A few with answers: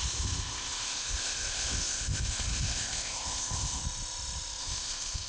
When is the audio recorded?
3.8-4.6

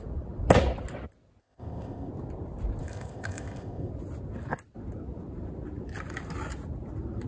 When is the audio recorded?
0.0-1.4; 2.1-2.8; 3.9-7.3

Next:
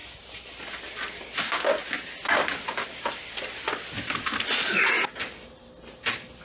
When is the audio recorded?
0.0-6.4